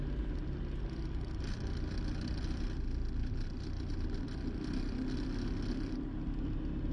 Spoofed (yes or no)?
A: no